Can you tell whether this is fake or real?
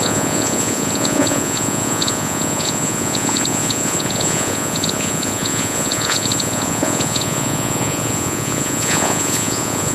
fake